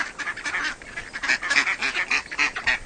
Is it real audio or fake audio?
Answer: real